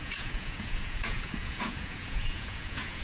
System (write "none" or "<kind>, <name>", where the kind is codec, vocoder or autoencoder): vocoder, Vocos